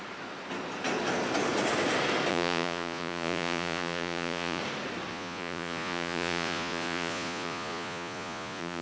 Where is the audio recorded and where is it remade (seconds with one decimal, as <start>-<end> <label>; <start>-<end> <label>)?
0.0-2.3 recorded; 2.3-4.6 remade; 4.6-5.1 recorded; 5.1-8.8 remade